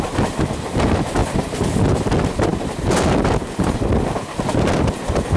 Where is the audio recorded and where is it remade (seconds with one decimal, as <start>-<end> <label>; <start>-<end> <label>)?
0.0-5.4 recorded

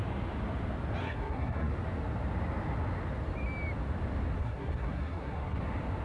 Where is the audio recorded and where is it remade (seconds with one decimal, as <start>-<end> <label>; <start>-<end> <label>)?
0.0-1.0 recorded; 1.0-1.7 remade; 1.7-4.4 recorded; 4.4-5.6 remade; 5.6-6.0 recorded

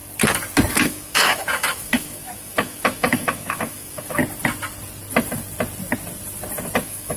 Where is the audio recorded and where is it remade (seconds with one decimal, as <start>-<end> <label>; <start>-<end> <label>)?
0.0-0.7 recorded; 0.7-4.2 remade; 4.2-6.8 recorded; 6.8-7.2 remade

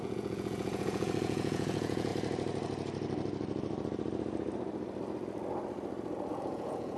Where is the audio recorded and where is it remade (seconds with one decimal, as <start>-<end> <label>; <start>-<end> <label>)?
0.0-2.1 remade; 2.1-6.3 recorded; 6.3-7.0 remade

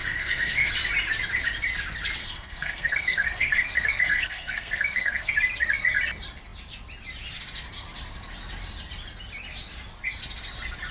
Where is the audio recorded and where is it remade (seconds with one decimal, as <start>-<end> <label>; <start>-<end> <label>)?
0.0-0.7 remade; 0.7-2.2 recorded; 2.2-5.3 remade; 5.3-10.9 recorded